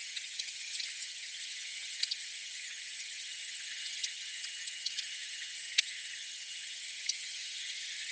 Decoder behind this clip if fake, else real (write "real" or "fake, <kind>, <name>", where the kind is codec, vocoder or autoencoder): fake, vocoder, HiFi-GAN